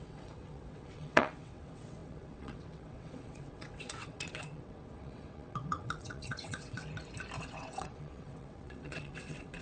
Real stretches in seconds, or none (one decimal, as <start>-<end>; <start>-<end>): 6.8-7.4